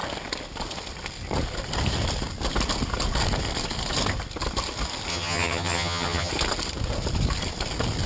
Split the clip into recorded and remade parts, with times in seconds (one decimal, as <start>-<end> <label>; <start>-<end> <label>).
0.0-5.1 recorded; 5.1-6.3 remade; 6.3-8.1 recorded